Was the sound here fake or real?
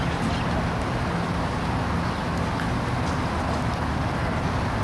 real